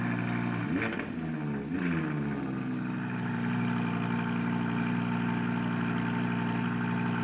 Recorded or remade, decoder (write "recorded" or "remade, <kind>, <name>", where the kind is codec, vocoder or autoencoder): recorded